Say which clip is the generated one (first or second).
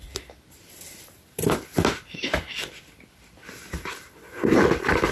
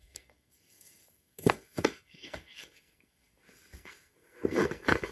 second